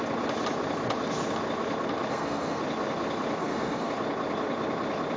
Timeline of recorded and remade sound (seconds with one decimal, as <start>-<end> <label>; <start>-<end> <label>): 0.0-2.1 recorded; 2.1-2.6 remade; 2.6-3.4 recorded; 3.4-3.9 remade; 3.9-5.2 recorded